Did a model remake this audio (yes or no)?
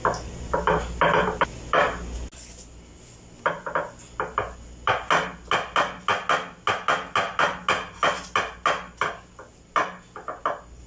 no